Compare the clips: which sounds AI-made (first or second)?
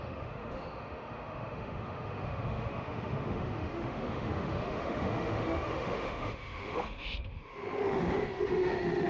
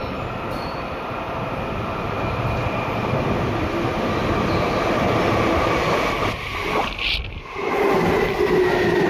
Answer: first